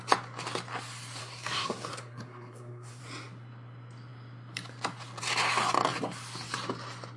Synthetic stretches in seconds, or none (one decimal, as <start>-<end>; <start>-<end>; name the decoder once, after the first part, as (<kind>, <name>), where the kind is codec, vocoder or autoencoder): 1.2-3.0 (codec, SNAC)